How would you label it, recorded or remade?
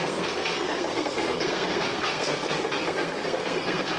remade